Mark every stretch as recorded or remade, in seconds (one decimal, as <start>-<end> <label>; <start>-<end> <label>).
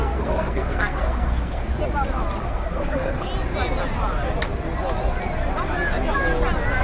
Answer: 0.0-1.7 remade; 1.7-2.4 recorded; 2.4-3.3 remade; 3.3-6.8 recorded